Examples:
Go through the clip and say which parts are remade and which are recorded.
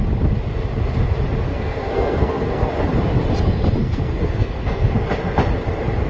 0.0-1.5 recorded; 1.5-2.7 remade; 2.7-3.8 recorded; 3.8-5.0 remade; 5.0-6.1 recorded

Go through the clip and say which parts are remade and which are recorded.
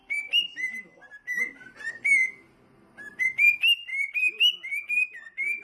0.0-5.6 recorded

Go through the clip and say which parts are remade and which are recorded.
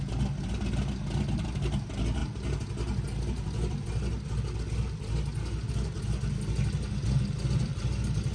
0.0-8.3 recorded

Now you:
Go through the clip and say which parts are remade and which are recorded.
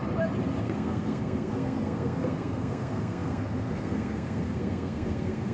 0.0-0.6 recorded; 0.6-5.5 remade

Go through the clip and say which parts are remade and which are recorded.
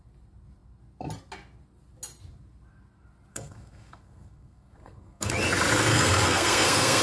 0.0-3.3 recorded; 3.3-5.3 remade; 5.3-5.9 recorded; 5.9-7.0 remade